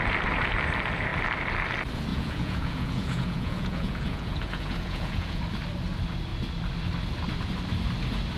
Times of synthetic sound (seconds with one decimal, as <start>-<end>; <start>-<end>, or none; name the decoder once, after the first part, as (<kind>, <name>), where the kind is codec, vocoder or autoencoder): 2.1-5.4 (vocoder, Vocos)